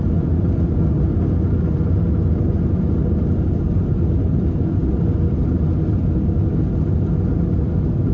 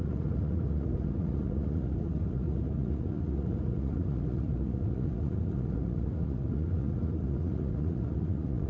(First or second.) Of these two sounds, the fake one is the second